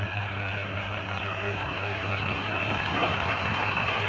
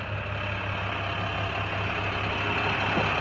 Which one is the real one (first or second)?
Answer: second